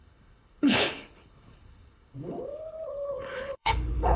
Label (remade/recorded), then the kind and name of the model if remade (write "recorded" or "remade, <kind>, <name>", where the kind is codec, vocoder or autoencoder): remade, codec, HILCodec